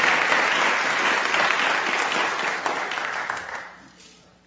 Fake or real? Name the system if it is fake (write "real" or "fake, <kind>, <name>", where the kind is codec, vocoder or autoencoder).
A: real